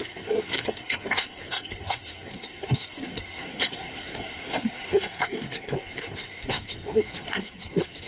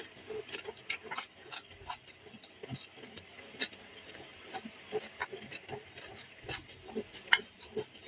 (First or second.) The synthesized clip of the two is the first